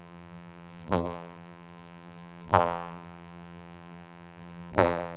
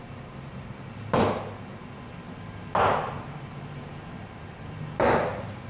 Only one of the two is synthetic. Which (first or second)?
first